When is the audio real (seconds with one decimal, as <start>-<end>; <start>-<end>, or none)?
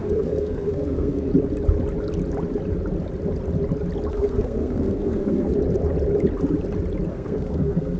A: 1.3-4.1; 5.5-7.1